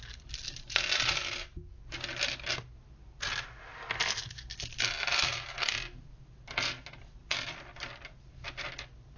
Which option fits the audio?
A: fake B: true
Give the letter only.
B